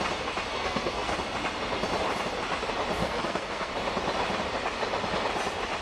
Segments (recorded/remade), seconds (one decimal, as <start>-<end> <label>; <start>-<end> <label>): 0.0-0.5 recorded; 0.5-1.1 remade; 1.1-3.0 recorded; 3.0-3.7 remade; 3.7-5.8 recorded